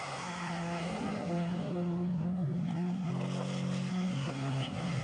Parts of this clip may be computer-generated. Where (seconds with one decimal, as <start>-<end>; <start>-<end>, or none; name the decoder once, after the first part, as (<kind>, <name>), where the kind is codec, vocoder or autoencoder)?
0.0-3.1 (codec, SNAC); 3.9-5.0